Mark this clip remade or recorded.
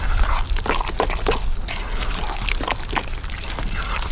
recorded